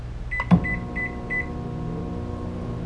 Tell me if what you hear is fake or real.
real